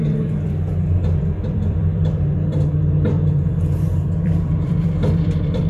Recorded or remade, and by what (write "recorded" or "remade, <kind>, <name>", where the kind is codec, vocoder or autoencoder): remade, vocoder, BigVGAN v2